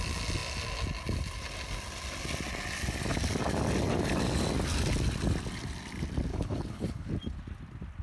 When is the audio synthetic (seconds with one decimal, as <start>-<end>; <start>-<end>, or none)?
6.3-7.1